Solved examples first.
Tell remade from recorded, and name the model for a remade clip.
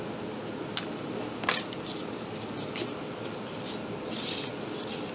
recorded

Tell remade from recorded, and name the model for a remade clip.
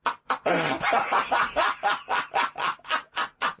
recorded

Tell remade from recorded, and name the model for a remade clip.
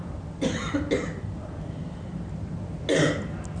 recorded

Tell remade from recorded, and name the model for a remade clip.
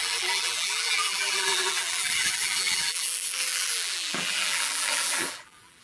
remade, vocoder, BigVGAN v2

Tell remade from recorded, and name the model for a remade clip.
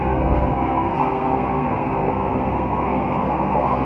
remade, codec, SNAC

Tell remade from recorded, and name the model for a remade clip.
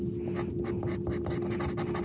recorded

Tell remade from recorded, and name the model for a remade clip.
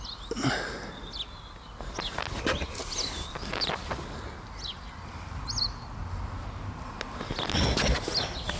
recorded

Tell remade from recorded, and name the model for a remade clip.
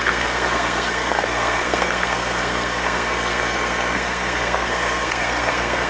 remade, codec, SNAC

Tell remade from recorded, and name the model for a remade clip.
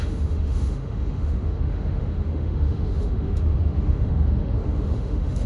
remade, autoencoder, DAC-VAE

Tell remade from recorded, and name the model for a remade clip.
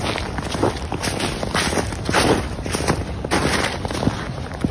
remade, vocoder, BigVGAN v2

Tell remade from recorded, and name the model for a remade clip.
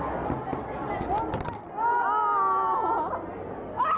recorded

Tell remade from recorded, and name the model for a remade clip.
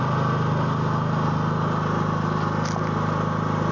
recorded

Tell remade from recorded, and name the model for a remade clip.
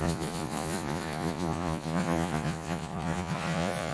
remade, vocoder, Vocos